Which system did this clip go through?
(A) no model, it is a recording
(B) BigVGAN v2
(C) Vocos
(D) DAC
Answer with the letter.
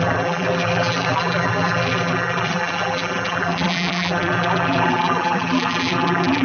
B